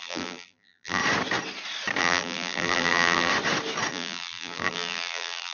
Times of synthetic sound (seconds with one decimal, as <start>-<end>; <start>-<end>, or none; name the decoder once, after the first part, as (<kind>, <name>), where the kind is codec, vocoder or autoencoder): 0.0-1.0 (vocoder, BigVGAN v2); 2.0-3.3; 3.9-5.5